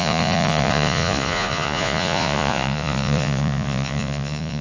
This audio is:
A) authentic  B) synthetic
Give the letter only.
B